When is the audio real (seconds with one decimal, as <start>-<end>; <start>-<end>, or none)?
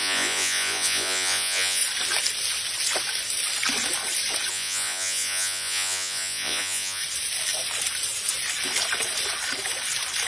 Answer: 1.8-4.5; 7.0-10.3